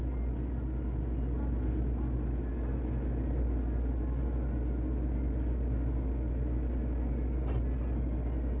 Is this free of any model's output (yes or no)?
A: yes